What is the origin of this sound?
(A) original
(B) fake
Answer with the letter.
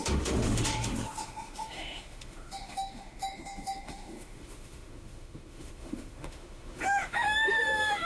B